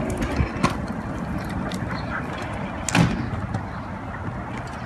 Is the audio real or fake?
real